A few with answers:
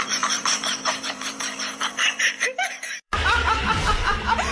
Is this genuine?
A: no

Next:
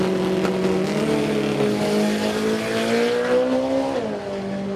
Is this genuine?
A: yes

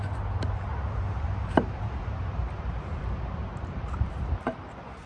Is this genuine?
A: no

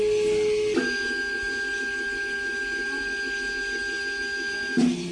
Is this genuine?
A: yes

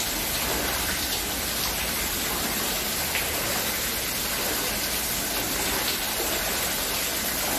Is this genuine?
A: yes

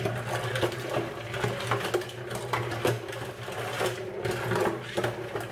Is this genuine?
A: yes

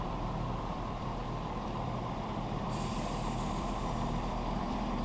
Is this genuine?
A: no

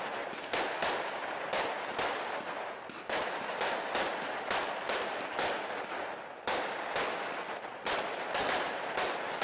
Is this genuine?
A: yes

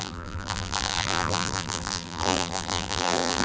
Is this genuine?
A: no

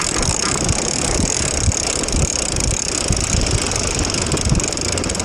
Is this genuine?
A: yes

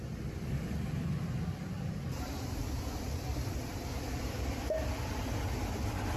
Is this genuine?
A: no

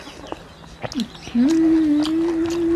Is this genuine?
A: yes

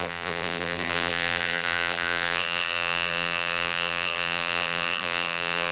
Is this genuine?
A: no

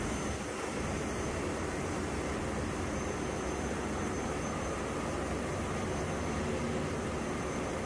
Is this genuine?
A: yes